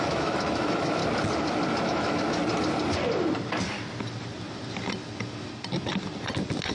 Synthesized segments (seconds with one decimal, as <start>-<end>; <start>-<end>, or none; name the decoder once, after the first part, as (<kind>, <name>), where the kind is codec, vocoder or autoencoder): 0.0-1.0 (autoencoder, DAC-VAE); 1.8-2.4